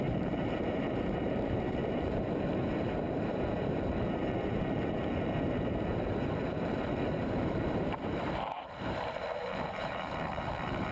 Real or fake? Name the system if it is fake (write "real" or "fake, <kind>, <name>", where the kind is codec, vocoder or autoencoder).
fake, vocoder, BigVGAN v2